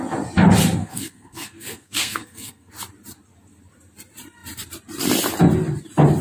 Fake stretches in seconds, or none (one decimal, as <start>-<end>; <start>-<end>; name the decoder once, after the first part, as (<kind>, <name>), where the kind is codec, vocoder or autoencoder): 0.8-2.7 (codec, SNAC)